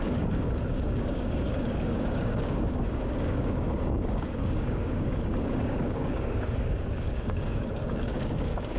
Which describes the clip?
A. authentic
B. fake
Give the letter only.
B